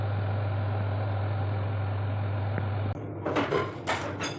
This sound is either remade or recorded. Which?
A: recorded